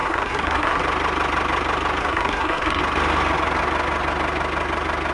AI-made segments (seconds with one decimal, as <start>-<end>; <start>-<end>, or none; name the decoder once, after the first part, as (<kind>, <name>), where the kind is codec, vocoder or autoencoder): 0.0-0.8 (codec, SNAC); 2.0-2.8